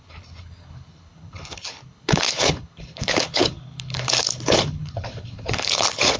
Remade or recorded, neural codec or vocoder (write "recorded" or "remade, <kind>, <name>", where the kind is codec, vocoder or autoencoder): remade, codec, HILCodec